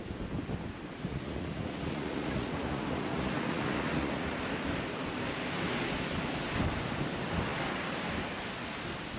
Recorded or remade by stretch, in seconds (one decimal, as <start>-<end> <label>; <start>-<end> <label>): 0.0-1.1 recorded; 1.1-4.4 remade; 4.4-9.2 recorded

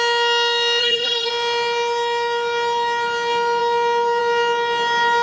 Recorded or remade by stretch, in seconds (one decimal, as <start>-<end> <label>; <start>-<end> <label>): 0.0-0.8 recorded; 0.8-1.3 remade; 1.3-5.2 recorded

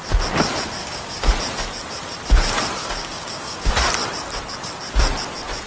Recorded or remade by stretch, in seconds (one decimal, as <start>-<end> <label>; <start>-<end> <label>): 0.0-0.8 recorded; 0.8-1.3 remade; 1.3-2.8 recorded; 2.8-3.7 remade; 3.7-5.7 recorded

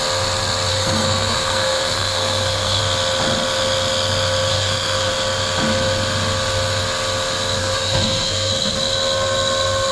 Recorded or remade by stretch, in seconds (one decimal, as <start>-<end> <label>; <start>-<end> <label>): 0.0-0.7 recorded; 0.7-2.8 remade; 2.8-4.5 recorded; 4.5-5.1 remade; 5.1-7.6 recorded; 7.6-8.5 remade; 8.5-9.9 recorded